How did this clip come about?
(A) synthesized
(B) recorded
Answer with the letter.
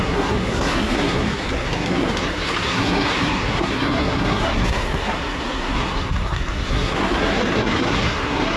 A